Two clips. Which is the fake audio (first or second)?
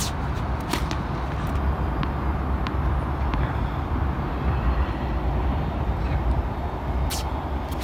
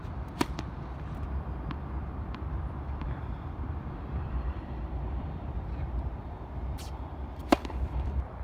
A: second